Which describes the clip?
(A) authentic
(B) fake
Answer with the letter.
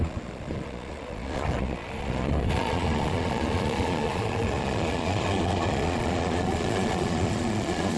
B